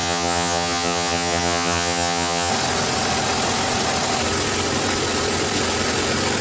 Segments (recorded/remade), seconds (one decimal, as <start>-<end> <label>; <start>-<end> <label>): 0.0-2.5 remade; 2.5-6.4 recorded